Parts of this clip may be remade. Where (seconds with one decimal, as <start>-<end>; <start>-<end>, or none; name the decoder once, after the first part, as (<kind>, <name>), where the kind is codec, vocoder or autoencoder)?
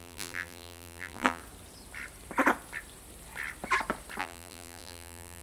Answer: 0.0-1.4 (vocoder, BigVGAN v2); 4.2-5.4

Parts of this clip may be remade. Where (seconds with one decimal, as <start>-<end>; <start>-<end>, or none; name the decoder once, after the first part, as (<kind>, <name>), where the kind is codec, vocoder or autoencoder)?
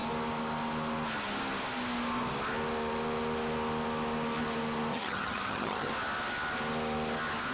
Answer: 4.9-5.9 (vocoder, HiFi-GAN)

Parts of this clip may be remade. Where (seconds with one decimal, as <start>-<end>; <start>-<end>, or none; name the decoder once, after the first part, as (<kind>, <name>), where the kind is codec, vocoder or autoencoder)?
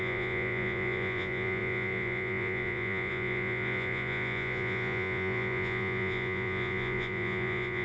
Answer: 0.0-7.8 (vocoder, Vocos)